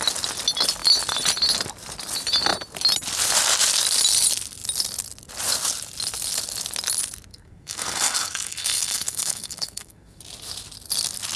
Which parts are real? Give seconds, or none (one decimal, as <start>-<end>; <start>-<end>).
0.0-7.3; 10.2-11.4